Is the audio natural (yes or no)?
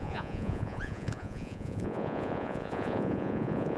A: no